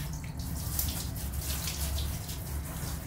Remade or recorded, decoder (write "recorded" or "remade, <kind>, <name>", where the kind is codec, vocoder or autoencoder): recorded